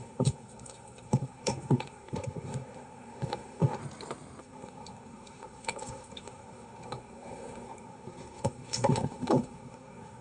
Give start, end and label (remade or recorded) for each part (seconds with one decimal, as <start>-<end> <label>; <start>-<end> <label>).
0.0-3.8 remade; 3.8-4.4 recorded; 4.4-10.2 remade